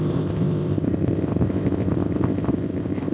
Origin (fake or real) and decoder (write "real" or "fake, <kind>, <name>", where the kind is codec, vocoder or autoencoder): fake, codec, ZipCodec